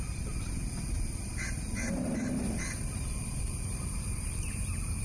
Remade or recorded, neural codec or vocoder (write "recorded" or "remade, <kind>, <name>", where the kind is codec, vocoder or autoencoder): remade, vocoder, BigVGAN v2